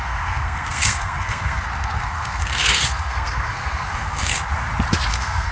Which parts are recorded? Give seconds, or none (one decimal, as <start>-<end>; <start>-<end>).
4.5-5.1